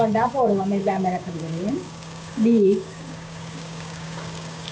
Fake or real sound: fake